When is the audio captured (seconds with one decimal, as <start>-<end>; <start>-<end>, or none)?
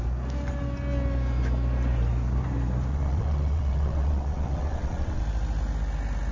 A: 0.0-2.9; 5.2-6.3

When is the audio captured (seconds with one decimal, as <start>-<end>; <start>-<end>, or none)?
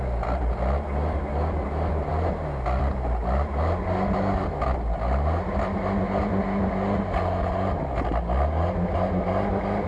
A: 0.0-9.9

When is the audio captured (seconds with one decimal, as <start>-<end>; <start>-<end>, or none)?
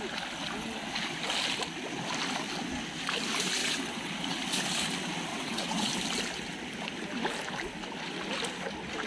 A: 0.0-3.6; 4.1-5.3; 5.9-9.1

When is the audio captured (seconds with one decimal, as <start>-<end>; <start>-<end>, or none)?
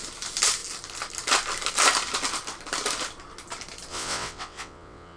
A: 0.0-3.9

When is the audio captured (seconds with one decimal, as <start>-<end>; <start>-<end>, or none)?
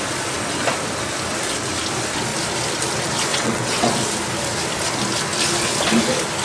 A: 0.0-3.3; 3.9-6.4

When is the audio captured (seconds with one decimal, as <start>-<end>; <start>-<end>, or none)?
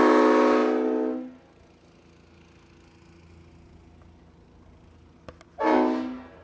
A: 0.0-6.4